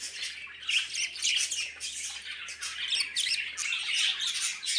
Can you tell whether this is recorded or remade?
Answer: recorded